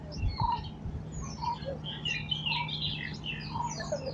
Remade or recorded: recorded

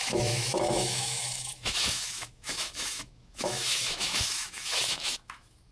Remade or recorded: remade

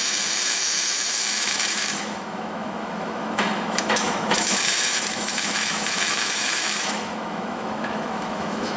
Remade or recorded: remade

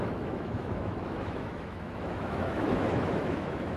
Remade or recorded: remade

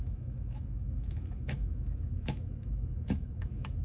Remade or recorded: remade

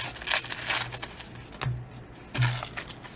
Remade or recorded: recorded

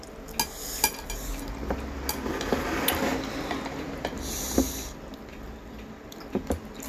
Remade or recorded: recorded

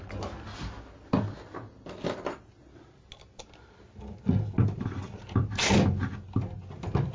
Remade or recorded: recorded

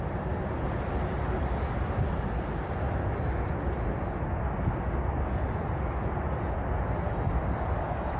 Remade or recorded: recorded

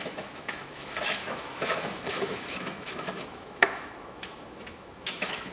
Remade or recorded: remade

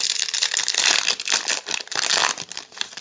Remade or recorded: recorded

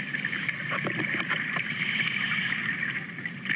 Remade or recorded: recorded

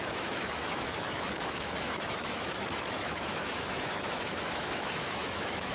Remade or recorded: remade